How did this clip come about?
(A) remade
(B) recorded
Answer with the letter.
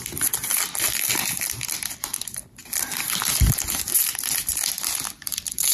B